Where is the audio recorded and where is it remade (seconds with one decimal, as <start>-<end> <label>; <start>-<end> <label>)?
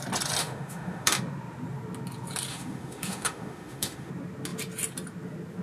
0.0-0.4 recorded; 0.4-1.2 remade; 1.2-2.5 recorded; 2.5-4.1 remade; 4.1-5.6 recorded